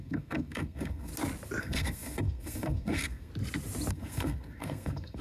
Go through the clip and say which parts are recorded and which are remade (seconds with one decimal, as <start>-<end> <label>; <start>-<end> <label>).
0.0-1.1 remade; 1.1-1.6 recorded; 1.6-3.3 remade; 3.3-3.9 recorded; 3.9-5.2 remade